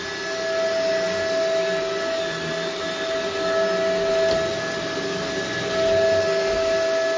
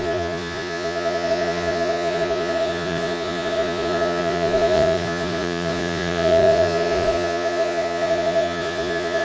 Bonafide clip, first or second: first